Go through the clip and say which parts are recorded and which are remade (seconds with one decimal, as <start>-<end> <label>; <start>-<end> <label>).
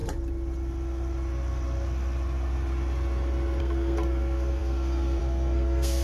0.0-3.6 recorded; 3.6-6.0 remade